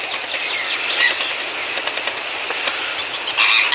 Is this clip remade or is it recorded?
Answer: recorded